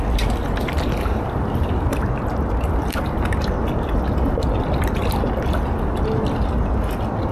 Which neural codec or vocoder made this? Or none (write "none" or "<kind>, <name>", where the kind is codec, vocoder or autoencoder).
none